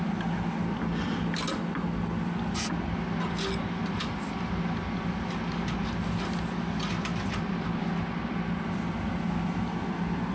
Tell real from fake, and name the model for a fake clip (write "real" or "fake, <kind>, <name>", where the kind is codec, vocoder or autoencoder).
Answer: real